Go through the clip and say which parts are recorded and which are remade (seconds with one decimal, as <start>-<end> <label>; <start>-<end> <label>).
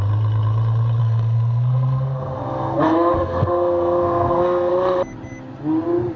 0.0-1.0 recorded; 1.0-4.7 remade; 4.7-6.2 recorded